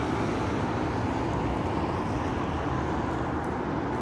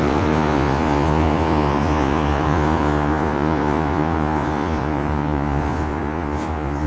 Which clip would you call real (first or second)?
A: first